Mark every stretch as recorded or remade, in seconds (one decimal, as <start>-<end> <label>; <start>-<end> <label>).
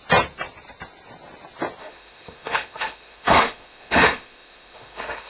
0.0-1.8 recorded; 1.8-5.3 remade